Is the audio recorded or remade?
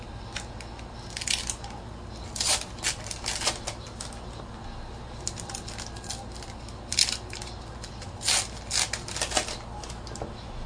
recorded